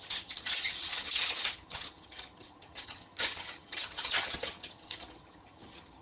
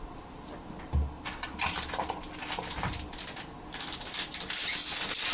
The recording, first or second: second